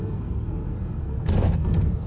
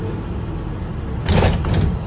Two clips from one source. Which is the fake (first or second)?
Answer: first